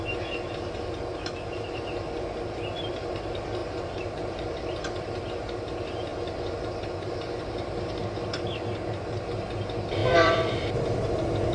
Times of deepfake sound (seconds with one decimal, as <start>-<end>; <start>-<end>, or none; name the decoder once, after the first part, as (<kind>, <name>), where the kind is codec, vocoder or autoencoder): 3.6-5.2 (vocoder, BigVGAN v2); 10.0-11.1